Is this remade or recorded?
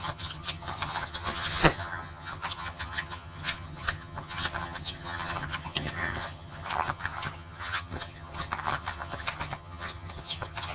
remade